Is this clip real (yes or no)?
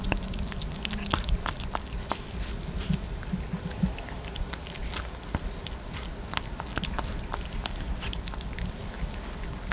yes